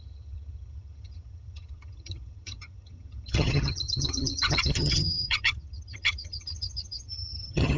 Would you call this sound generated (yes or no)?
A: yes